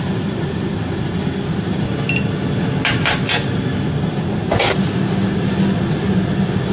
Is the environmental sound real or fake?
real